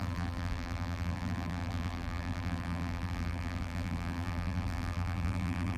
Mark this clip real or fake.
fake